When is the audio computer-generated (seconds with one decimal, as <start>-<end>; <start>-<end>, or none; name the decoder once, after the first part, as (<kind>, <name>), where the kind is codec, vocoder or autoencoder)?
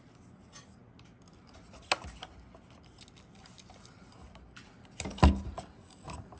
none